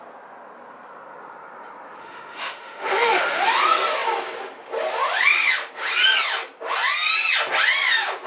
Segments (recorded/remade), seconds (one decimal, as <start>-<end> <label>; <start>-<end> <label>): 0.0-2.0 recorded; 2.0-3.4 remade; 3.4-8.3 recorded